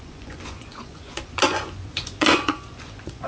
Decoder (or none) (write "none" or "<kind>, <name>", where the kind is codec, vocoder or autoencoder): vocoder, Vocos